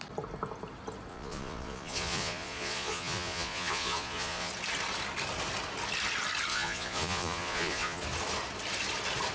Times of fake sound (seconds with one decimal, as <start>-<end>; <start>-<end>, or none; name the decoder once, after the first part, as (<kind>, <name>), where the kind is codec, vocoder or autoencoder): 1.1-4.5 (vocoder, Vocos); 6.5-8.0